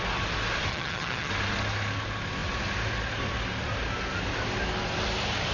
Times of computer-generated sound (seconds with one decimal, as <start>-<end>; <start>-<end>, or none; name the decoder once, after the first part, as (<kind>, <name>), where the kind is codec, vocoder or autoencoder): 0.7-1.3 (vocoder, HiFi-GAN)